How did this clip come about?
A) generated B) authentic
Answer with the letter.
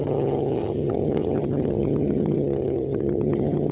A